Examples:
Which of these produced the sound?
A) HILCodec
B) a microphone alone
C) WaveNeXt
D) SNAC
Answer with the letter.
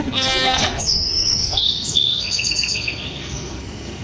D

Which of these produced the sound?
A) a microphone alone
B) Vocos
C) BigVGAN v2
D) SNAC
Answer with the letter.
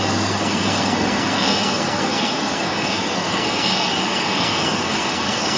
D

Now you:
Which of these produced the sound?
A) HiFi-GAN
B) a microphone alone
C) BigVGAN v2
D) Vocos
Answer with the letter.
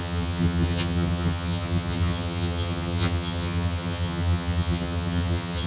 A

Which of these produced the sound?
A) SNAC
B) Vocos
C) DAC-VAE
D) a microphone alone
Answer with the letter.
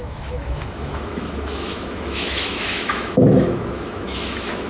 C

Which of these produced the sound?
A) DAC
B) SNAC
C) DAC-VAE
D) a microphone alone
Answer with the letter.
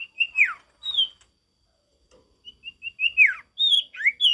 D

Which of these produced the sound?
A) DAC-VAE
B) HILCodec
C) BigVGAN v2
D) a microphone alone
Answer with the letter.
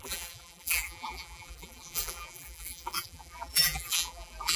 C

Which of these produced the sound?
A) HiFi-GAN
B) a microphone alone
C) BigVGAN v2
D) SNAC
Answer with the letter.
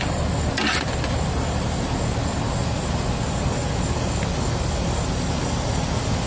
B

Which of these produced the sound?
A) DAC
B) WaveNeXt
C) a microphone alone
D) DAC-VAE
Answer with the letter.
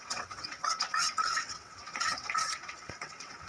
B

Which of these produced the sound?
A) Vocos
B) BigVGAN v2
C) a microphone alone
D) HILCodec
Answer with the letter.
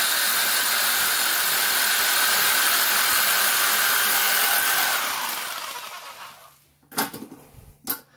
C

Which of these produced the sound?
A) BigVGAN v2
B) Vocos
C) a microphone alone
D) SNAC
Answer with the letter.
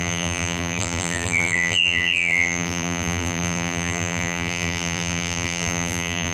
A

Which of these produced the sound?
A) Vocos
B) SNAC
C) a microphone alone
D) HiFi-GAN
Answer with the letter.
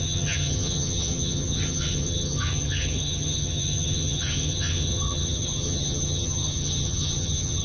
D